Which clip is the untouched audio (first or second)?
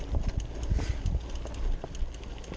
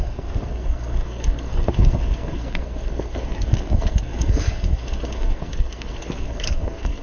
first